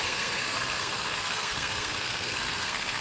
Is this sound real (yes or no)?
no